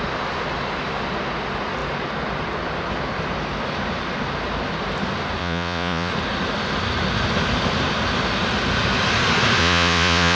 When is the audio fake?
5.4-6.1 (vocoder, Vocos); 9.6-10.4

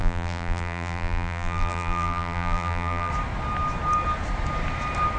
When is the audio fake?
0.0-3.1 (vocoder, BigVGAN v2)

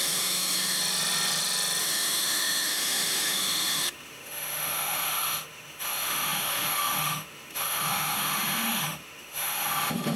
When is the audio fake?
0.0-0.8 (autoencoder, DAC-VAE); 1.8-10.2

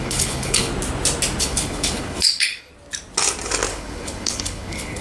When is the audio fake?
0.0-0.7 (codec, HILCodec); 1.4-2.7; 3.7-5.0